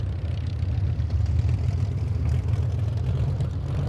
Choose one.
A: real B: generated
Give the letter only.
A